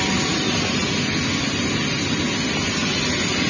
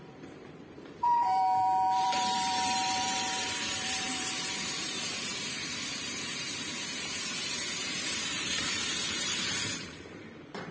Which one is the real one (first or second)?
first